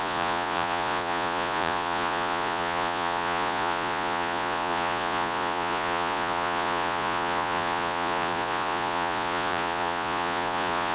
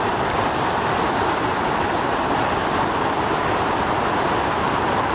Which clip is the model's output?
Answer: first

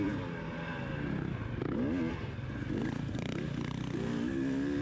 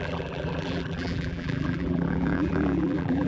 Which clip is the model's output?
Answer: second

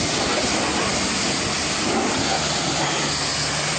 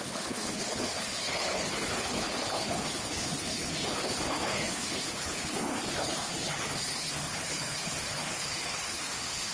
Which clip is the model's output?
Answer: second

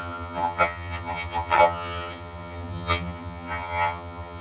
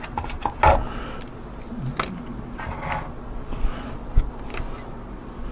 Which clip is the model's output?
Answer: first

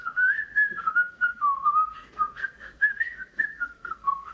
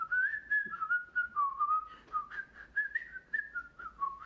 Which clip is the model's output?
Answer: first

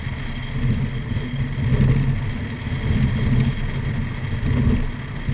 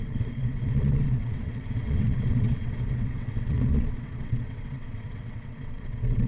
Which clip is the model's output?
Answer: second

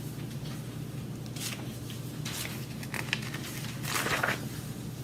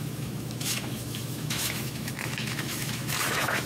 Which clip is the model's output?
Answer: second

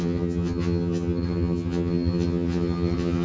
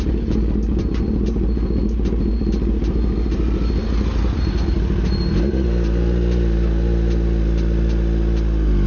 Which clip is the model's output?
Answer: first